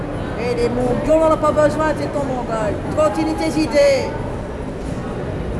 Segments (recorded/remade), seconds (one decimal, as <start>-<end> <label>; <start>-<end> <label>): 0.0-5.6 recorded